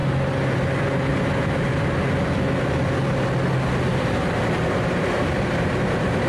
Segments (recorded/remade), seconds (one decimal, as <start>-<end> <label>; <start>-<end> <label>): 0.0-1.1 recorded; 1.1-1.7 remade; 1.7-3.9 recorded; 3.9-6.3 remade